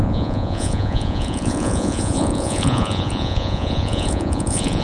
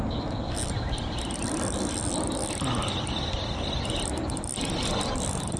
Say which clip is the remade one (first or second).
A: first